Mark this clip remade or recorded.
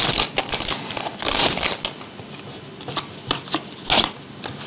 recorded